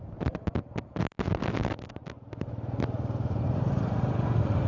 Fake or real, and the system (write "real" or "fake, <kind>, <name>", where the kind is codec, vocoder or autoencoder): real